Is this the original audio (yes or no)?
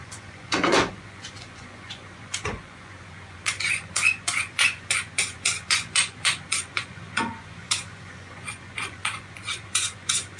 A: no